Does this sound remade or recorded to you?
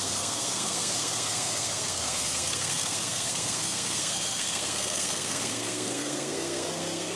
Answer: remade